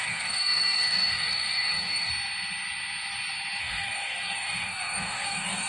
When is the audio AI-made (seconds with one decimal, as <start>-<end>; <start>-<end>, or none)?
0.0-2.1; 3.6-5.7